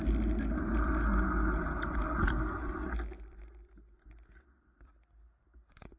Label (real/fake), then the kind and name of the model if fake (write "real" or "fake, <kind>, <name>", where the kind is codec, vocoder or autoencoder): real